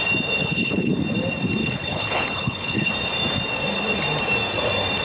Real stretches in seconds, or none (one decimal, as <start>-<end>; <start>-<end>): 0.0-0.4; 0.9-1.6; 2.9-5.0